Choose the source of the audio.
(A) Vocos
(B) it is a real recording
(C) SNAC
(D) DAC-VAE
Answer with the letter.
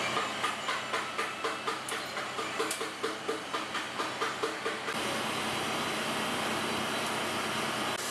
B